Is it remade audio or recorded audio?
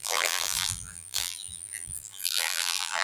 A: remade